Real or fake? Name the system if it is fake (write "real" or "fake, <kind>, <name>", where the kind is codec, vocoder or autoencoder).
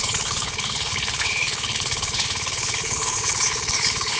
fake, codec, HILCodec